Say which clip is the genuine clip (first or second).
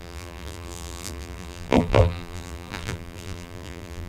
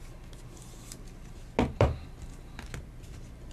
second